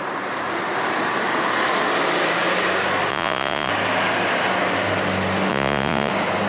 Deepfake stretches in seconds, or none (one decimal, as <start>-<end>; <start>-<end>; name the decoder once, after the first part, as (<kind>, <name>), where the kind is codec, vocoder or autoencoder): 3.1-3.7 (vocoder, Vocos); 5.5-6.1